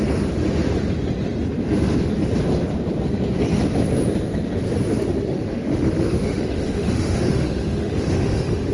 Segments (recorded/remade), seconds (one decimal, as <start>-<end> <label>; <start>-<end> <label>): 0.0-5.3 recorded; 5.3-8.7 remade